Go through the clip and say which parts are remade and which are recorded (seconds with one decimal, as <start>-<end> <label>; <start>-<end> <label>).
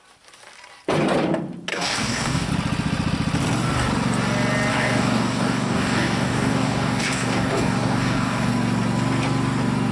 0.0-1.7 recorded; 1.7-2.5 remade; 2.5-4.7 recorded; 4.7-8.5 remade; 8.5-9.9 recorded